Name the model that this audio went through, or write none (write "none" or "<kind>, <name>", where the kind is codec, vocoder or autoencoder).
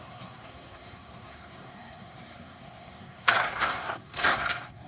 codec, SNAC